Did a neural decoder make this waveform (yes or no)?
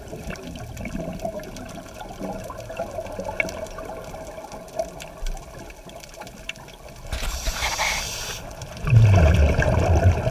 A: no